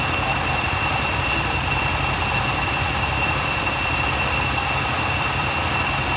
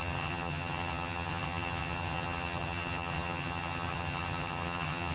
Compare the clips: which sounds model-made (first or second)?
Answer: second